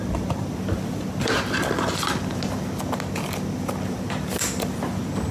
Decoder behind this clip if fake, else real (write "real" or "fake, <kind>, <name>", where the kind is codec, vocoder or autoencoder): real